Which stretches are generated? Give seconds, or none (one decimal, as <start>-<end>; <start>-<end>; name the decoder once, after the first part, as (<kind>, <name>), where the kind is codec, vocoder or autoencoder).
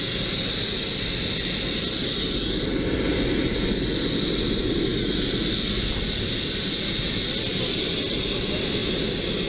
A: none